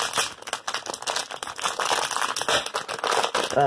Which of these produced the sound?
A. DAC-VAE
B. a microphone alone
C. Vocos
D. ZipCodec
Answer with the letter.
B